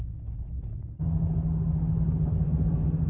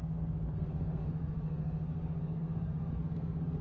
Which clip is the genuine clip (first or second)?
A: first